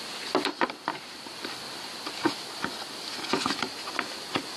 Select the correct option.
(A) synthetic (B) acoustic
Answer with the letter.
B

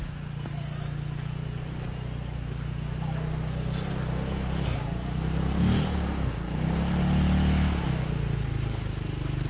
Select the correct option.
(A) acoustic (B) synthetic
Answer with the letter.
A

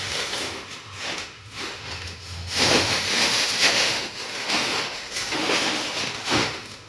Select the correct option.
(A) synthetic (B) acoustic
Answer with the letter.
A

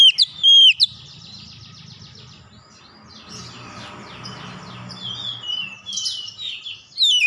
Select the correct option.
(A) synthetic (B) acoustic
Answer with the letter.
B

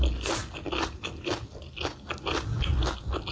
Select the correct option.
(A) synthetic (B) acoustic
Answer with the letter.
B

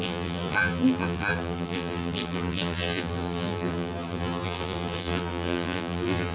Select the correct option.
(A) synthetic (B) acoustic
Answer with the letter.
A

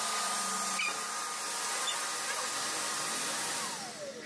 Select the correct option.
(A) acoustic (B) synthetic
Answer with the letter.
A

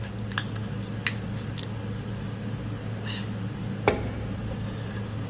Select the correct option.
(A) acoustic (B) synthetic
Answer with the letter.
A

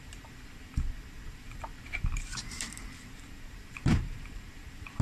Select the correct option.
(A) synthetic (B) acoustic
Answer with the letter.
A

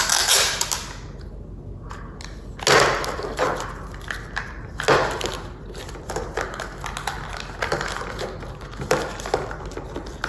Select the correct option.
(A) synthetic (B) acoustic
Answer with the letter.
B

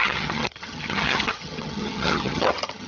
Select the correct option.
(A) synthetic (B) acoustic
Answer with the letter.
A